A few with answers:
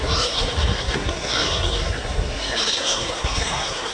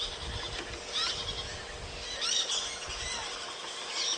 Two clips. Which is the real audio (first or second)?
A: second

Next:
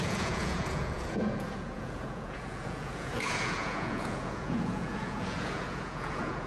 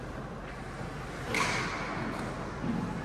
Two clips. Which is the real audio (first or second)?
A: second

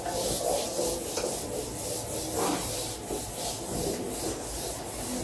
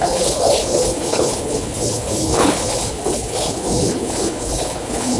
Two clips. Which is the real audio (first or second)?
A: first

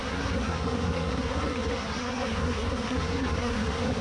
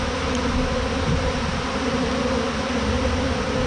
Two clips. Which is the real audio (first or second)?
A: second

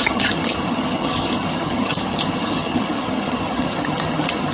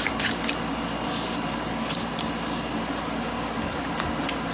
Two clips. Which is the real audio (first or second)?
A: second